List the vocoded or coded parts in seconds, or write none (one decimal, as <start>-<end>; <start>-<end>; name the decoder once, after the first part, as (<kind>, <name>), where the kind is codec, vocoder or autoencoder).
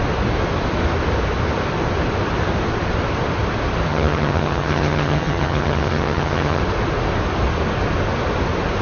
3.9-6.6 (vocoder, HiFi-GAN)